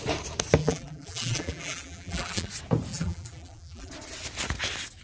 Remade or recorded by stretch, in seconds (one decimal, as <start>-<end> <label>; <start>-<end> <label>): 0.0-0.6 recorded; 0.6-2.5 remade; 2.5-2.9 recorded; 2.9-3.9 remade; 3.9-5.0 recorded